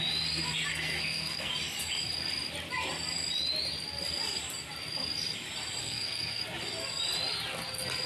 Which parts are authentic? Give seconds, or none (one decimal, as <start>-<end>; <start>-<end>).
0.0-0.7; 1.5-5.8; 6.4-8.1